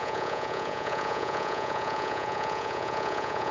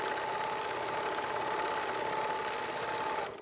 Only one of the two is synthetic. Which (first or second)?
first